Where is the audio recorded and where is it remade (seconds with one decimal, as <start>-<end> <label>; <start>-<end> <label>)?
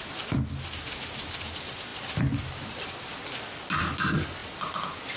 0.0-1.9 recorded; 1.9-3.6 remade; 3.6-4.4 recorded; 4.4-5.2 remade